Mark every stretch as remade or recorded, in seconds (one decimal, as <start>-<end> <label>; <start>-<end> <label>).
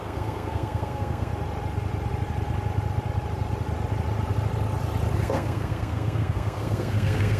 0.0-1.3 remade; 1.3-5.2 recorded; 5.2-7.4 remade